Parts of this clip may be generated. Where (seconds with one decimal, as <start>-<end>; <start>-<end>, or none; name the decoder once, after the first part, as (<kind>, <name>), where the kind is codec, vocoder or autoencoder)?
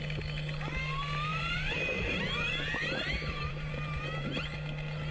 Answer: 1.3-4.4 (vocoder, BigVGAN v2)